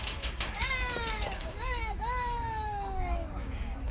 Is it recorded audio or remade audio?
remade